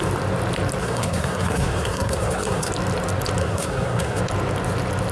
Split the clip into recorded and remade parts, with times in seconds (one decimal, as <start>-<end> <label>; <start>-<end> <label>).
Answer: 0.0-0.8 recorded; 0.8-2.7 remade; 2.7-3.4 recorded; 3.4-4.2 remade; 4.2-5.1 recorded